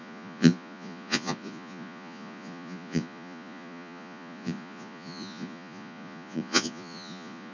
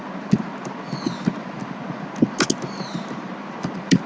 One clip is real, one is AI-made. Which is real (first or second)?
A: second